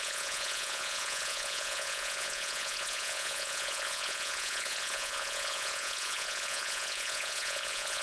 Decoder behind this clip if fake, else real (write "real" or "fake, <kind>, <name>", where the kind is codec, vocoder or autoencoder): fake, vocoder, Vocos